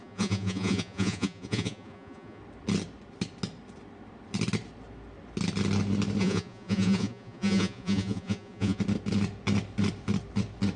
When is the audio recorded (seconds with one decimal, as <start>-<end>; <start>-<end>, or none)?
2.4-6.2; 8.8-10.8